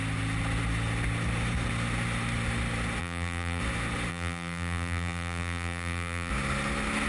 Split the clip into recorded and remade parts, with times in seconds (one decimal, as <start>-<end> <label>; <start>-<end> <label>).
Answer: 0.0-3.0 recorded; 3.0-3.6 remade; 3.6-4.1 recorded; 4.1-6.3 remade; 6.3-7.1 recorded